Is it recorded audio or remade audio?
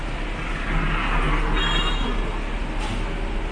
recorded